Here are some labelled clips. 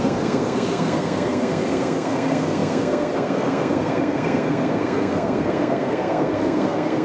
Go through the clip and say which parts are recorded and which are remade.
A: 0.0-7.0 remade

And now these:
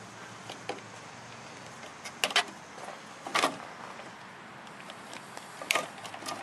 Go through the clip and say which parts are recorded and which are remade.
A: 0.0-6.4 recorded

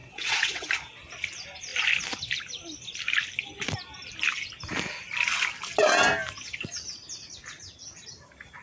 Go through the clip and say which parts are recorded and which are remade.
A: 0.0-0.7 remade; 0.7-8.6 recorded

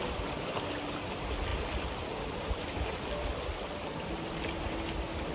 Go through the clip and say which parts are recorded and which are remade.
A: 0.0-5.3 recorded